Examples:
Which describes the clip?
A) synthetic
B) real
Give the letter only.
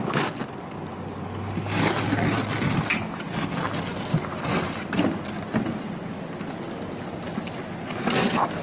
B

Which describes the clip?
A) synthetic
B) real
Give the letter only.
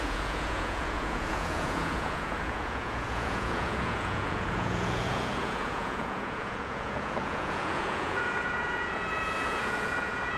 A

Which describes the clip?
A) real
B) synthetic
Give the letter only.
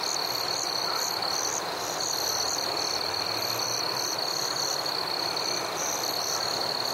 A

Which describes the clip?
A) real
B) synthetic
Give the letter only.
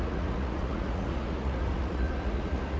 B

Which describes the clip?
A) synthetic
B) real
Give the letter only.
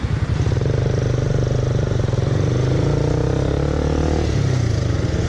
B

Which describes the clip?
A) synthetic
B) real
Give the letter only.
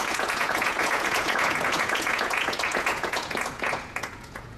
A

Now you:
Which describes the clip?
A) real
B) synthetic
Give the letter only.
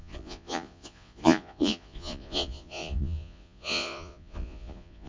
B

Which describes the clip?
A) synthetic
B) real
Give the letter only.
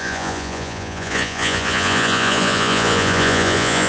A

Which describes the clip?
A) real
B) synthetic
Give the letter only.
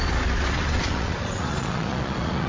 B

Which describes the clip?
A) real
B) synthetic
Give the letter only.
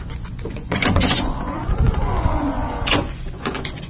B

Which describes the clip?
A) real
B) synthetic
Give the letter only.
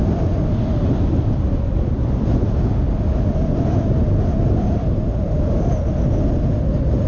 A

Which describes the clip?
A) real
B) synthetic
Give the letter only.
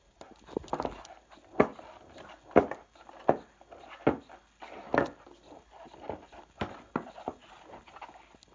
A